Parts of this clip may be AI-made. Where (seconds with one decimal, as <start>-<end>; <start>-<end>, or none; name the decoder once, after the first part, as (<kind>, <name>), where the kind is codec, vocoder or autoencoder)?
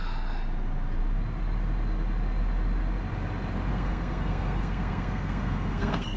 3.7-6.2 (codec, SNAC)